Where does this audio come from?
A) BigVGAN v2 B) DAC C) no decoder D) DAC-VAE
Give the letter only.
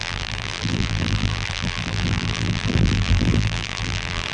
A